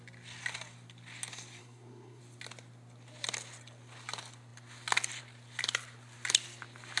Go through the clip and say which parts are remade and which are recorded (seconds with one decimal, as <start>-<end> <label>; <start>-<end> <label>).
0.0-1.6 recorded; 1.6-2.2 remade; 2.2-7.0 recorded

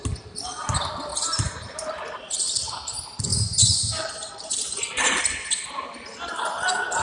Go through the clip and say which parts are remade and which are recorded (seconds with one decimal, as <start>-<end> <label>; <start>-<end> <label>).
0.0-1.1 recorded; 1.1-2.4 remade; 2.4-3.3 recorded; 3.3-5.2 remade; 5.2-7.0 recorded

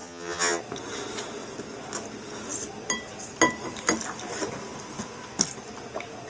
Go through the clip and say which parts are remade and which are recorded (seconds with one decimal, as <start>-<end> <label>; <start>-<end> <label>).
0.0-0.6 remade; 0.6-6.3 recorded

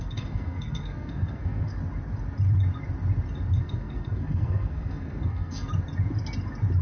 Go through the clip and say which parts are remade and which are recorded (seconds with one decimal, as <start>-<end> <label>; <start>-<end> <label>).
0.0-1.7 remade; 1.7-3.6 recorded; 3.6-5.7 remade; 5.7-6.8 recorded

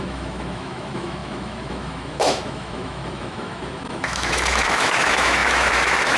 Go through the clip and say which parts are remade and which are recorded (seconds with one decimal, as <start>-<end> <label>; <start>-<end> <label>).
0.0-6.2 remade